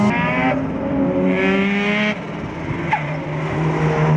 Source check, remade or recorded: recorded